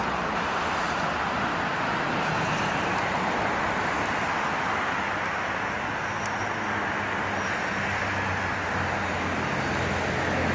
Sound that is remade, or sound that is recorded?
recorded